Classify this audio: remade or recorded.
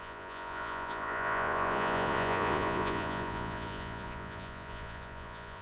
remade